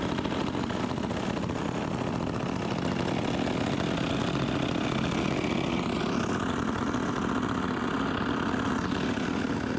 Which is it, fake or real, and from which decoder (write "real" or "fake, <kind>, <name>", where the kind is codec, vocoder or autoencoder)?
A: real